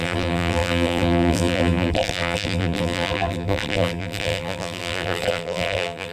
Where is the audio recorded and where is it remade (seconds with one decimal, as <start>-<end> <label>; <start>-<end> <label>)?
0.0-6.1 remade

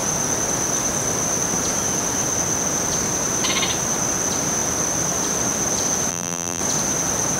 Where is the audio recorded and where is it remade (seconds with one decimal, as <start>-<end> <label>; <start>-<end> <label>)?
0.0-6.1 recorded; 6.1-6.6 remade; 6.6-7.4 recorded

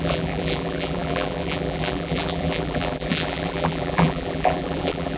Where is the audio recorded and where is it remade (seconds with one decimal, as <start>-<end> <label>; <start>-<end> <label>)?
0.0-5.2 remade

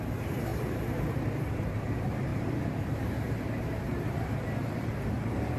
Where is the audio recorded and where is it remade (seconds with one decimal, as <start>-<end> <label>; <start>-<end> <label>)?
0.0-5.6 remade

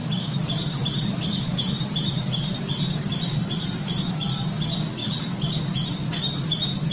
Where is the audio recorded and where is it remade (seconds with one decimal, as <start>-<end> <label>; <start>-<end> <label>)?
0.0-4.1 remade; 4.1-6.9 recorded

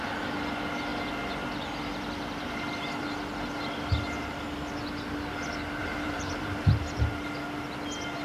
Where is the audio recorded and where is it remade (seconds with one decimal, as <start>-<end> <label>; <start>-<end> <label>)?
0.0-5.8 recorded; 5.8-6.7 remade; 6.7-8.2 recorded

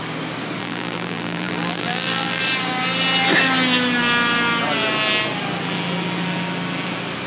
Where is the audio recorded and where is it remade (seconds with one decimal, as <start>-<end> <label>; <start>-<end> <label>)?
0.0-0.6 recorded; 0.6-2.4 remade; 2.4-7.3 recorded

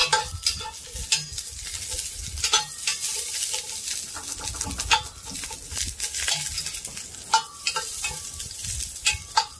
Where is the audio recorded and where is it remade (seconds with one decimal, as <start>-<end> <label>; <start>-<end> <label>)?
0.0-2.0 recorded; 2.0-2.9 remade; 2.9-7.3 recorded; 7.3-9.6 remade